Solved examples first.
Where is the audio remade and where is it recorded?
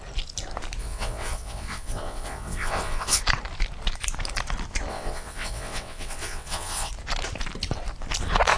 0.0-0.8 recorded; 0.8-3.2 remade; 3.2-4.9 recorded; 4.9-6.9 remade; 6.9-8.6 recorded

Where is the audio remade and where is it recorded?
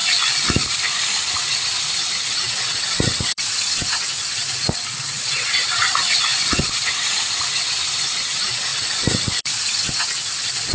0.0-1.3 recorded; 1.3-10.7 remade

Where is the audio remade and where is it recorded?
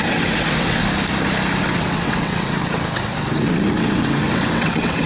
0.0-0.8 remade; 0.8-1.6 recorded; 1.6-5.1 remade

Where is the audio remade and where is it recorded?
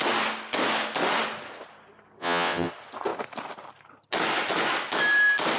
0.0-2.2 recorded; 2.2-2.7 remade; 2.7-5.6 recorded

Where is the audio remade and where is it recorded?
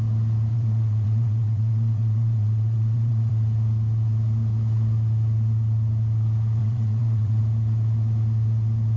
0.0-0.5 recorded; 0.5-3.3 remade; 3.3-6.6 recorded; 6.6-7.4 remade; 7.4-9.0 recorded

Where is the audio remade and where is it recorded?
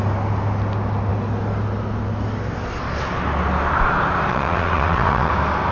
0.0-4.3 recorded; 4.3-5.3 remade; 5.3-5.7 recorded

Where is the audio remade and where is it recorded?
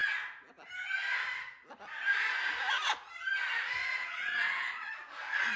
0.0-4.0 recorded; 4.0-4.9 remade; 4.9-5.6 recorded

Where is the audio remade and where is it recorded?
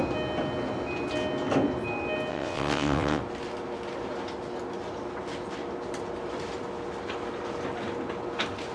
0.0-2.3 recorded; 2.3-3.2 remade; 3.2-8.7 recorded